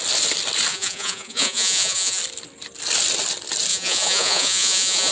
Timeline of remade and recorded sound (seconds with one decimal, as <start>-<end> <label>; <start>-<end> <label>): 0.0-0.7 recorded; 0.7-2.2 remade; 2.2-3.7 recorded; 3.7-5.1 remade

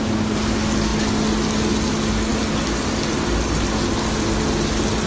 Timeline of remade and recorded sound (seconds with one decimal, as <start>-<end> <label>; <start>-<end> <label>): 0.0-5.1 recorded

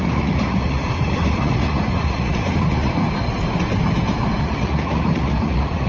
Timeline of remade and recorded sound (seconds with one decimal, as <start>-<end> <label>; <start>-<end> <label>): 0.0-3.0 remade; 3.0-4.4 recorded; 4.4-5.9 remade

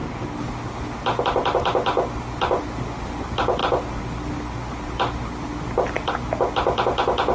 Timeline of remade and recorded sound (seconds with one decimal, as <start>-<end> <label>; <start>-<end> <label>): 0.0-7.3 recorded